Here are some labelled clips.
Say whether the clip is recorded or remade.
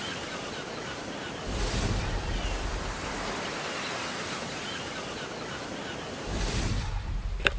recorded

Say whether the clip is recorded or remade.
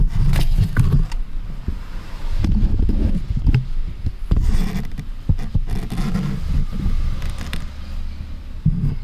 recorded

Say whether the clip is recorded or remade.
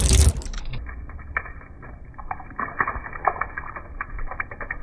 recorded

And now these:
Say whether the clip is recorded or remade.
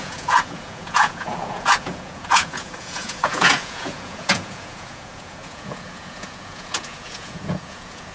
remade